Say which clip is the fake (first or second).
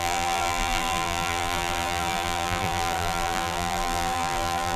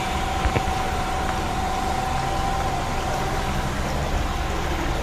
first